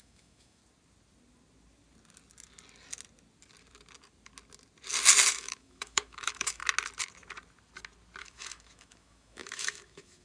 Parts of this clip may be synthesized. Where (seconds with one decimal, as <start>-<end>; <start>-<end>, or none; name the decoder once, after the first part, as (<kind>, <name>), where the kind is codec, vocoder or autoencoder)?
0.0-0.6 (autoencoder, DAC-VAE); 5.3-6.6; 8.2-10.2